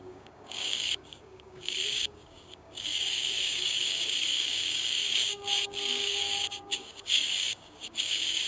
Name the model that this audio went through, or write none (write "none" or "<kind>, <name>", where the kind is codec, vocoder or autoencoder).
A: codec, DAC